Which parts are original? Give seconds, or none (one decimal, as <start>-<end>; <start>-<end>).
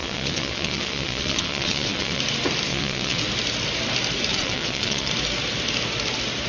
2.2-2.7; 3.2-4.3; 5.1-6.5